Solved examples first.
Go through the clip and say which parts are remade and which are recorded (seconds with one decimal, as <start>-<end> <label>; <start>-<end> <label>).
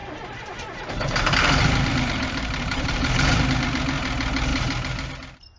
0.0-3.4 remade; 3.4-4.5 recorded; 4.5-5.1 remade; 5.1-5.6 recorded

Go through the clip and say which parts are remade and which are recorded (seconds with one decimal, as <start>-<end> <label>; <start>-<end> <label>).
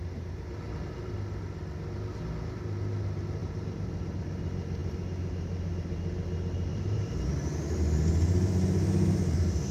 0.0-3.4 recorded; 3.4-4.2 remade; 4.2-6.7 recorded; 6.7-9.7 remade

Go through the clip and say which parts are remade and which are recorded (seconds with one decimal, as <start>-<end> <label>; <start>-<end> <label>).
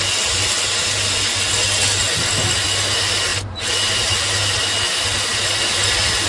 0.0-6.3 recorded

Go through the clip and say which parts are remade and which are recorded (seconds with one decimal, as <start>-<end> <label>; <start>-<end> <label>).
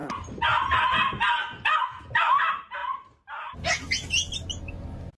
0.0-5.2 recorded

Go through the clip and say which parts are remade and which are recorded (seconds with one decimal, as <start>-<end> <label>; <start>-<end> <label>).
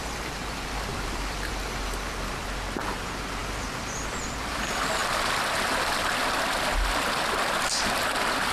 0.0-0.9 recorded; 0.9-1.5 remade; 1.5-5.0 recorded; 5.0-6.1 remade; 6.1-8.5 recorded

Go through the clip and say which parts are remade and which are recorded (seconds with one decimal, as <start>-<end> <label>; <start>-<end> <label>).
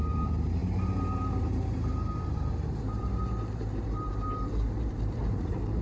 0.0-5.8 remade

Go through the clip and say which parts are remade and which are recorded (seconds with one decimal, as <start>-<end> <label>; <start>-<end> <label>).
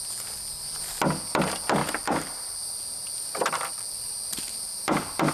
0.0-1.8 recorded; 1.8-5.3 remade